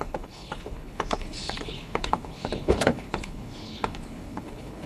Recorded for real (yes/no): no